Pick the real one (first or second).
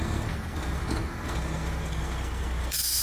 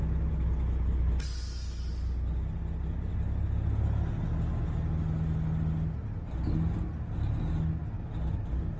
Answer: second